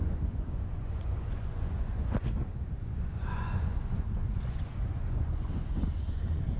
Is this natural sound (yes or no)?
no